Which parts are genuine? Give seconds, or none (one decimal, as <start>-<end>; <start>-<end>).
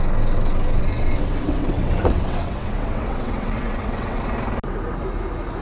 0.0-0.8; 4.2-5.6